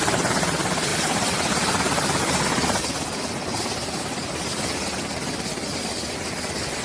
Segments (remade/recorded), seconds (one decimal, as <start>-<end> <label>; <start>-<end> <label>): 0.0-0.9 recorded; 0.9-2.2 remade; 2.2-6.8 recorded